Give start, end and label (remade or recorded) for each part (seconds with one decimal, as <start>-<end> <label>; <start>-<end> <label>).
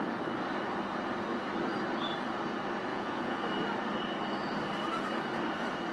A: 0.0-2.9 recorded; 2.9-3.4 remade; 3.4-5.9 recorded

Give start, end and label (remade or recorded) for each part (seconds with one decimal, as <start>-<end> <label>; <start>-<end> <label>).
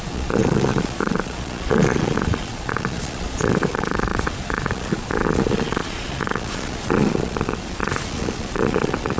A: 0.0-9.2 remade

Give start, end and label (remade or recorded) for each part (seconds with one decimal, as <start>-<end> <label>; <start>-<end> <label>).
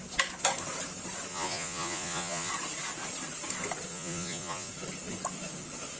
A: 0.0-1.3 recorded; 1.3-2.5 remade; 2.5-3.9 recorded; 3.9-4.7 remade; 4.7-6.0 recorded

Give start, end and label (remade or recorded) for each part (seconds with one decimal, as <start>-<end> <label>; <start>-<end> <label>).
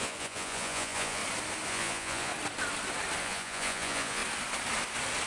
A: 0.0-1.2 remade; 1.2-1.7 recorded; 1.7-2.3 remade; 2.3-3.2 recorded; 3.2-4.2 remade; 4.2-5.3 recorded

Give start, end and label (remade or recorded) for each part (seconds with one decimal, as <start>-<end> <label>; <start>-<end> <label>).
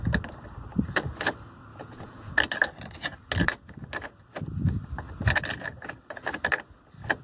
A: 0.0-1.7 recorded; 1.7-2.3 remade; 2.3-7.2 recorded